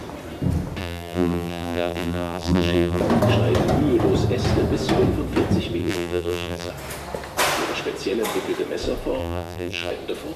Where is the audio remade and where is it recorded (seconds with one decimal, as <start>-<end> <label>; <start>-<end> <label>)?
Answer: 0.0-0.8 recorded; 0.8-3.0 remade; 3.0-5.8 recorded; 5.8-6.7 remade; 6.7-9.2 recorded; 9.2-9.9 remade; 9.9-10.4 recorded